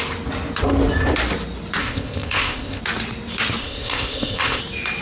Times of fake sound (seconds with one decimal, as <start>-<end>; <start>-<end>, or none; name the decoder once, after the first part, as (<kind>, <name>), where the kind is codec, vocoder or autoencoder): 1.8-2.8 (codec, ZipCodec); 3.6-4.6